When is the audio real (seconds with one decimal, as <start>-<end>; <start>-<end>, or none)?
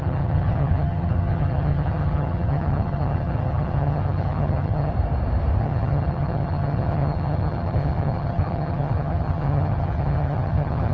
4.9-5.6